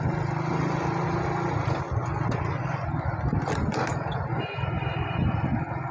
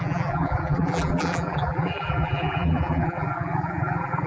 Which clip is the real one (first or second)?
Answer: first